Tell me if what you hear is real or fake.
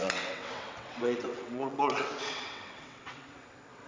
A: fake